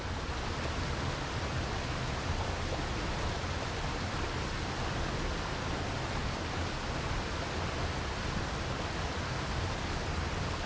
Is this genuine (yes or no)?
yes